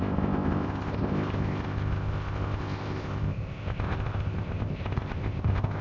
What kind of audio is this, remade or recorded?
remade